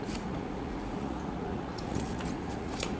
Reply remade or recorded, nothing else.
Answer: remade